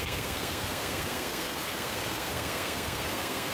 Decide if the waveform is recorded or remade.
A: remade